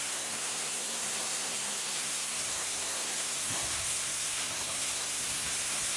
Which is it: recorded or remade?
remade